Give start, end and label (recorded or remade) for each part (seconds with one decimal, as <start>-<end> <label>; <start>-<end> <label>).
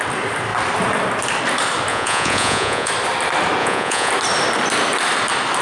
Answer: 0.0-1.9 recorded; 1.9-2.9 remade; 2.9-3.6 recorded; 3.6-4.1 remade; 4.1-5.6 recorded